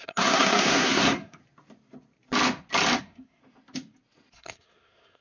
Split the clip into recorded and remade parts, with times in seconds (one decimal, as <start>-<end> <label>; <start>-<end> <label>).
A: 0.0-1.4 remade; 1.4-3.0 recorded; 3.0-3.4 remade; 3.4-4.3 recorded; 4.3-5.2 remade